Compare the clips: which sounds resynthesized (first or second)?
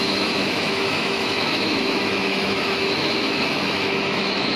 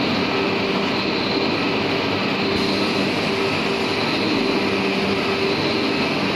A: first